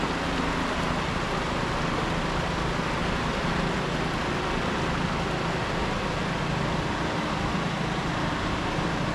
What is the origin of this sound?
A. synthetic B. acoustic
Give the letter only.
B